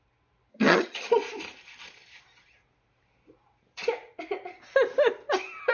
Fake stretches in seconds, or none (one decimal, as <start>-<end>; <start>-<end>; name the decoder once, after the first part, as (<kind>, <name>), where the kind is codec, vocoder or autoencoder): 0.5-1.1 (vocoder, HiFi-GAN)

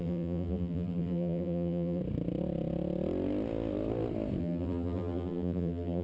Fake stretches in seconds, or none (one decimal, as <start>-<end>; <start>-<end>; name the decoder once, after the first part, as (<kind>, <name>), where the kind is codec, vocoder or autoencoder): 0.0-2.0 (vocoder, BigVGAN v2); 4.4-6.0

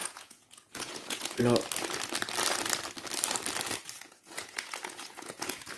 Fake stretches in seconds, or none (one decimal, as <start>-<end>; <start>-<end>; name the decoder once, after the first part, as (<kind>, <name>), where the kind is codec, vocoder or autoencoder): 0.0-1.4 (vocoder, Vocos); 4.0-5.8

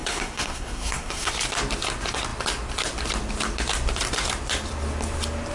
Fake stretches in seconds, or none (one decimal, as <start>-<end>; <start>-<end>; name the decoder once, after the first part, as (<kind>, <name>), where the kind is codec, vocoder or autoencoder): 0.0-1.3 (codec, SNAC)

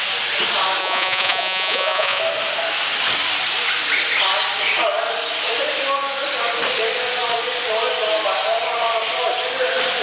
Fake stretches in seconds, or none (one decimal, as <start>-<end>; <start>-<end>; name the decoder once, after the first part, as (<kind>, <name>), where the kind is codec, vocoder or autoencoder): 0.8-2.2 (vocoder, Vocos)

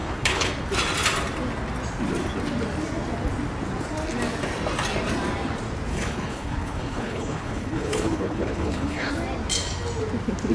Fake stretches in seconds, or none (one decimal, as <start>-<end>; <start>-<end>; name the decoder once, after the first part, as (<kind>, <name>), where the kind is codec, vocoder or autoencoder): 0.0-0.5 (codec, HILCodec); 5.9-9.1

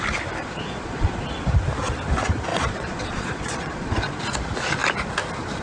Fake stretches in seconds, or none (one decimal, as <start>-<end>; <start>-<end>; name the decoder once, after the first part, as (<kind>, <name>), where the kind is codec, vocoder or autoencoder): 0.4-1.2 (vocoder, Vocos); 2.5-4.2